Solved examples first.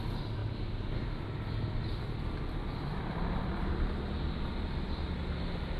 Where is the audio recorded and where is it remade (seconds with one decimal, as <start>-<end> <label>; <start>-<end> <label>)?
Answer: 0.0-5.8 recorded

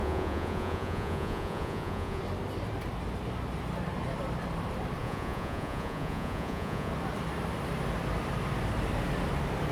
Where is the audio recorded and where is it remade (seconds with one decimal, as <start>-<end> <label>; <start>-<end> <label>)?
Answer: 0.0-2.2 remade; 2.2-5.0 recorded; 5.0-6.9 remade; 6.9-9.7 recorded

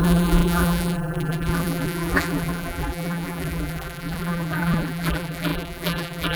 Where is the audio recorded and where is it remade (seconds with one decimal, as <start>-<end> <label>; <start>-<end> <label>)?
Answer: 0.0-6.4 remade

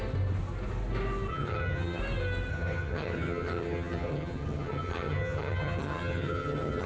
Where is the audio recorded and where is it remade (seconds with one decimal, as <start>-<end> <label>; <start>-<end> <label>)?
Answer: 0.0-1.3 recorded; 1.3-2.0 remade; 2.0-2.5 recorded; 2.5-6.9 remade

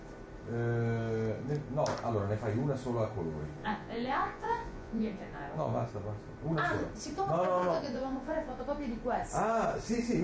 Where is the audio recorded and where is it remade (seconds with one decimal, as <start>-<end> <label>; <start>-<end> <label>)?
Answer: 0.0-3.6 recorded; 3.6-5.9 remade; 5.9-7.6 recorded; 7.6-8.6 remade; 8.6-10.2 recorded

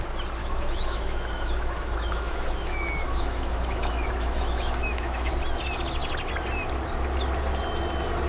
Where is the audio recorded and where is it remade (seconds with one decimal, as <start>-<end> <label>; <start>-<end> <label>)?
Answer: 0.0-0.4 recorded; 0.4-5.3 remade; 5.3-8.3 recorded

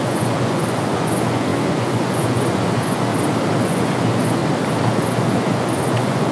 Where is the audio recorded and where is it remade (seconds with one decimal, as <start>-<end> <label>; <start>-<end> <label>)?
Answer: 0.0-3.1 remade; 3.1-3.6 recorded; 3.6-4.4 remade; 4.4-4.9 recorded; 4.9-6.3 remade